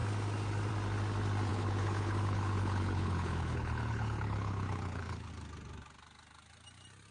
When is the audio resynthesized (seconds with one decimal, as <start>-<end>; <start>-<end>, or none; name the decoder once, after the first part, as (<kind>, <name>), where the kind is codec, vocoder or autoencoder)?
1.5-5.3 (codec, HILCodec)